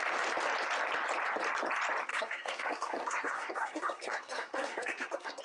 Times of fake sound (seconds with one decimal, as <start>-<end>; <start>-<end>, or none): 2.1-5.4